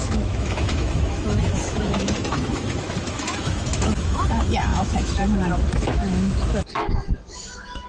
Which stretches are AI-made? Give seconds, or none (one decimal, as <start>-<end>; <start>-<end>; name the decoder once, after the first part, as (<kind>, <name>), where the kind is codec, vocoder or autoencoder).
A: 0.0-7.9 (autoencoder, DAC-VAE)